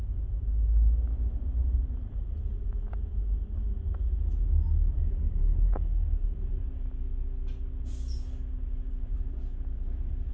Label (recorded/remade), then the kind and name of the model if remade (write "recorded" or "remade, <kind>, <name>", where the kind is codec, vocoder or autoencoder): recorded